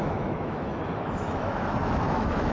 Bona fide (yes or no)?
no